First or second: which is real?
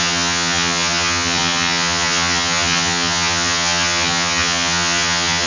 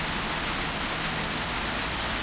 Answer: second